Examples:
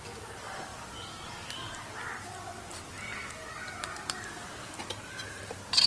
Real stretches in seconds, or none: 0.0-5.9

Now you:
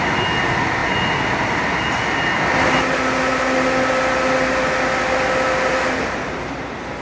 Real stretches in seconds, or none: 0.0-7.0

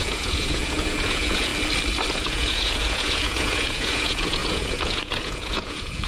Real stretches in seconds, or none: 1.5-2.1

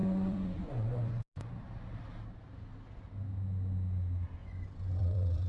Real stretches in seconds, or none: 1.5-4.4

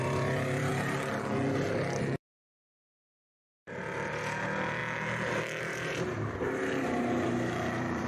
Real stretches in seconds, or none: 0.7-2.0; 4.8-5.6

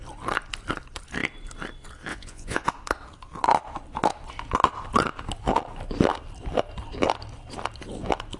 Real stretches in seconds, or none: 0.0-2.1; 2.7-8.4